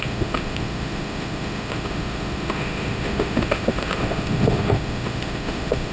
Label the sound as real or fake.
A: fake